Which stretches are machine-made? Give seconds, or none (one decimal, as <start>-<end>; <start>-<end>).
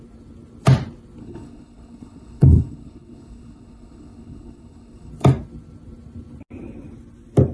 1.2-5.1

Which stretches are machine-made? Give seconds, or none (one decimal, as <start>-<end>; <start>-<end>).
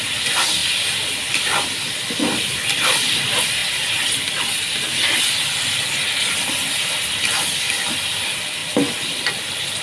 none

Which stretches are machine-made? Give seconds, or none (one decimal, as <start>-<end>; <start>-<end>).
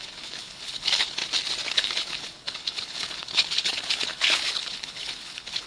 0.0-1.2; 1.7-5.7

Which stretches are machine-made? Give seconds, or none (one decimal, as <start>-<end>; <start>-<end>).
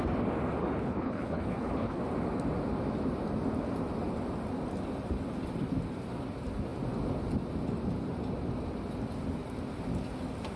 0.6-2.0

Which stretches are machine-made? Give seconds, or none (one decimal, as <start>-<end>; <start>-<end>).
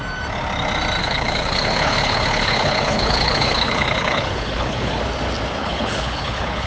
1.0-5.0; 5.6-6.7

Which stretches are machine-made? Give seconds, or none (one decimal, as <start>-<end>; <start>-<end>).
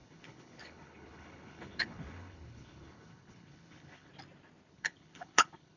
0.0-4.1; 4.7-5.8